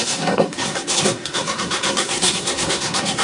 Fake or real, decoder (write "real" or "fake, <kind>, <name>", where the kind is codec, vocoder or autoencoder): fake, codec, SNAC